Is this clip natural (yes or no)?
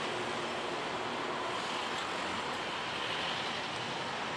yes